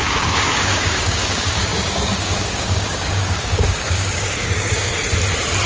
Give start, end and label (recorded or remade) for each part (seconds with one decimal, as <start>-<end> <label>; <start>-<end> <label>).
0.0-4.9 remade; 4.9-5.7 recorded